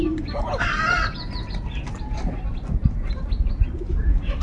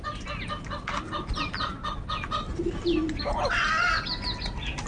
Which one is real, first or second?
second